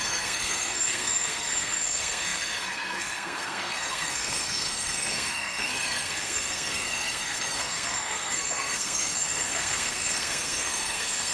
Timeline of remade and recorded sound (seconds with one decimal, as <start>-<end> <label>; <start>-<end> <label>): 0.0-11.3 remade